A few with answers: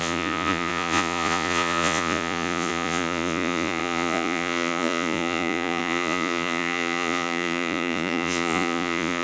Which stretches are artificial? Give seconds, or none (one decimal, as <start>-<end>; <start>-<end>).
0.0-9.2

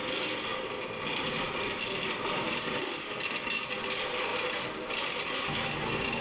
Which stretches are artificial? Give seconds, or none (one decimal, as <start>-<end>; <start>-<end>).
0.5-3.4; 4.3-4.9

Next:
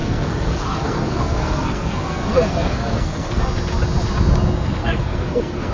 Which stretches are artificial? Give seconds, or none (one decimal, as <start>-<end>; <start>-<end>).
0.0-3.4; 4.8-5.7